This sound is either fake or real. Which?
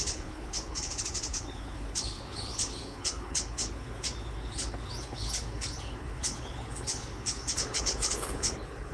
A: fake